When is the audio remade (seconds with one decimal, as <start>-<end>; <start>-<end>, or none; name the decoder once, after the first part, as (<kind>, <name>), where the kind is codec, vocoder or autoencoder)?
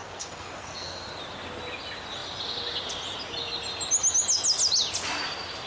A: 0.0-1.1 (codec, SNAC)